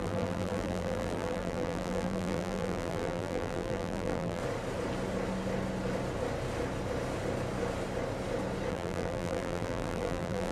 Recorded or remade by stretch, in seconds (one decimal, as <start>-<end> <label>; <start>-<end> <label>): 0.0-4.4 remade; 4.4-8.7 recorded; 8.7-10.5 remade